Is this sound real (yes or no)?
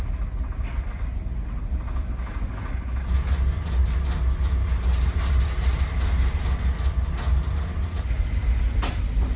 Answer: yes